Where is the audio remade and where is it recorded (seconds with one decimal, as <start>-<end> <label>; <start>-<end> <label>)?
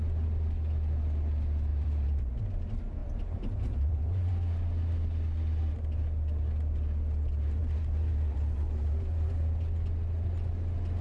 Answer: 0.0-1.7 recorded; 1.7-2.4 remade; 2.4-3.0 recorded; 3.0-4.3 remade; 4.3-7.6 recorded; 7.6-9.4 remade; 9.4-11.0 recorded